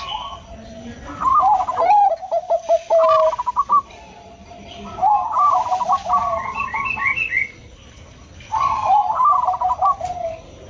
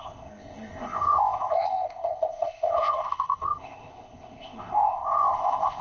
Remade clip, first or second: second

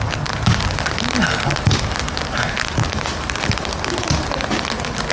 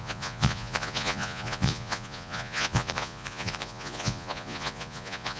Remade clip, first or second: second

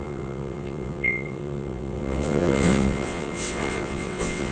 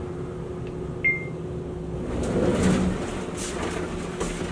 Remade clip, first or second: first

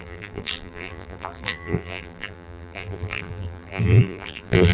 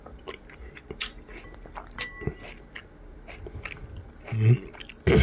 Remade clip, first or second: first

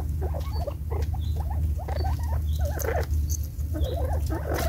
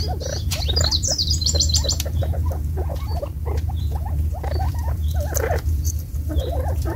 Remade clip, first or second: second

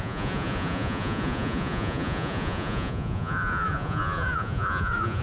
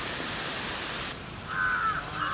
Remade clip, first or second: first